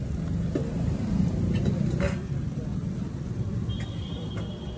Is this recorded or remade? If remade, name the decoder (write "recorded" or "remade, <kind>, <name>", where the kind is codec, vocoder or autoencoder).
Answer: remade, vocoder, BigVGAN v2